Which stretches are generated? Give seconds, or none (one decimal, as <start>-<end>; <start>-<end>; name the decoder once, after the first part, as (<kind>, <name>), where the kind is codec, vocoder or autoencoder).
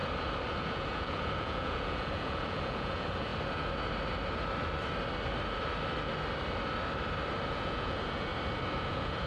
0.6-3.3 (vocoder, Vocos); 7.5-8.3; 8.9-9.3